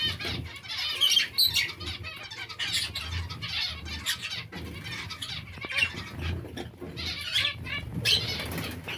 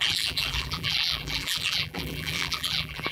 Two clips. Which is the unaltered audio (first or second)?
first